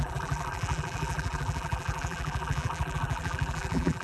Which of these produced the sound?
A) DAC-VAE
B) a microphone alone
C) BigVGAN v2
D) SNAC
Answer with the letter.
C